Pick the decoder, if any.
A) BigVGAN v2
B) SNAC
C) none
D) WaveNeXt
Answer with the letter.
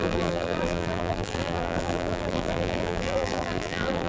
A